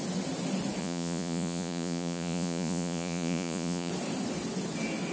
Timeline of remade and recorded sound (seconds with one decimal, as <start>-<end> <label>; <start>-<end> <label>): 0.0-0.8 recorded; 0.8-3.9 remade; 3.9-5.1 recorded